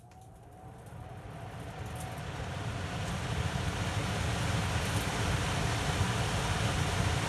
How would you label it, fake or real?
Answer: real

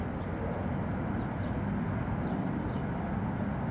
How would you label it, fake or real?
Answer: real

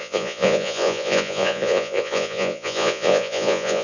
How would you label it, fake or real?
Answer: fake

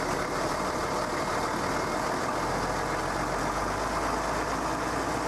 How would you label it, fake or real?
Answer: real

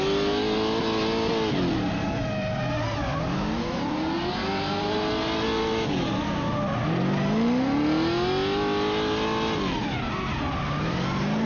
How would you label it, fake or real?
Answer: real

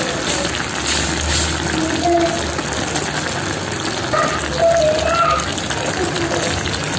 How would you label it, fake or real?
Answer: real